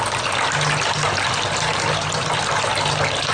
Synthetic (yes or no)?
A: no